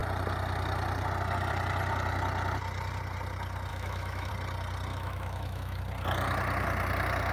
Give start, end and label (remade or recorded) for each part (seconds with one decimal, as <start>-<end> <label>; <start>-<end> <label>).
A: 0.0-3.7 recorded; 3.7-4.3 remade; 4.3-4.9 recorded; 4.9-5.8 remade; 5.8-7.3 recorded